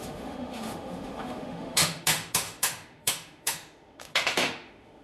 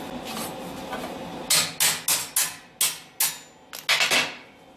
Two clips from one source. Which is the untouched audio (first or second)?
second